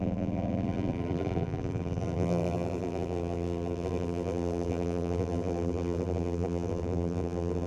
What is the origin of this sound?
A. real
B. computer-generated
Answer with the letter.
B